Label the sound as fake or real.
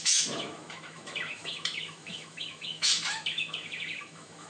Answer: fake